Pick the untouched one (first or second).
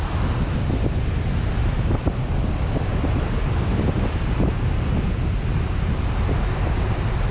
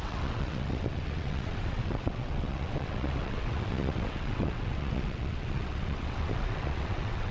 first